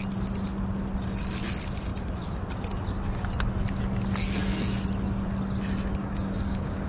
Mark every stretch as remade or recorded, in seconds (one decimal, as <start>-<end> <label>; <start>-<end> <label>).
0.0-6.0 recorded; 6.0-6.9 remade